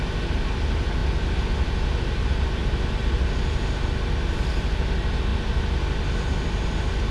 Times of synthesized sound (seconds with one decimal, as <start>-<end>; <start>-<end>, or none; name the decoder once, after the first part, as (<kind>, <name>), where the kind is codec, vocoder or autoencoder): none